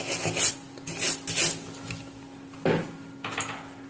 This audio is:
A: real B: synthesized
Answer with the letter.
A